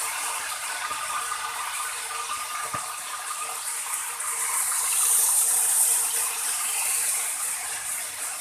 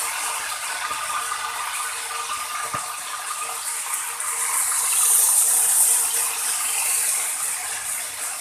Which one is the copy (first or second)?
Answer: first